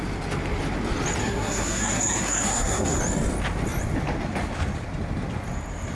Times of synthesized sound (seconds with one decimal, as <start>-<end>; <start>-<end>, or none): 1.2-3.0